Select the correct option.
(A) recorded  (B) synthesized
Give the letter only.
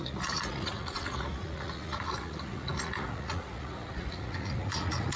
B